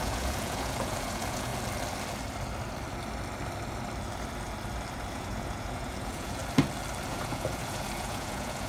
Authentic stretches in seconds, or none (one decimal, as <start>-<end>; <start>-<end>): 1.5-5.1; 6.4-7.1